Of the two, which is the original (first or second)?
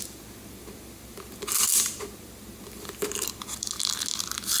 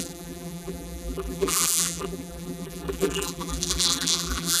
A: first